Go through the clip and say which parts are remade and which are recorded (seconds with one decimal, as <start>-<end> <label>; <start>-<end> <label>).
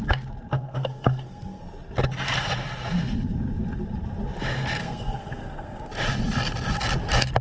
0.0-0.5 recorded; 0.5-1.6 remade; 1.6-4.8 recorded; 4.8-5.9 remade; 5.9-7.4 recorded